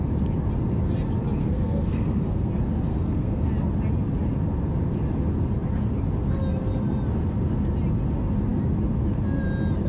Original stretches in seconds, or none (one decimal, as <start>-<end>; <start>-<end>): 0.0-1.4; 2.5-2.9; 3.5-9.9